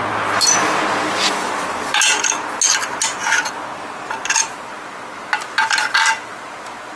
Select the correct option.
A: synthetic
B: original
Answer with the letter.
B